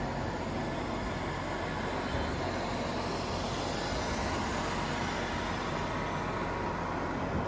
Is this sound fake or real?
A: real